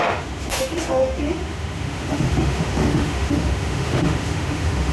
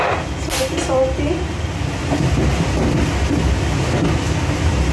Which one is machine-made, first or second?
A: first